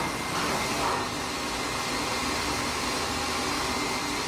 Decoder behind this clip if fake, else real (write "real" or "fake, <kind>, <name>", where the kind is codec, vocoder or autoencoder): real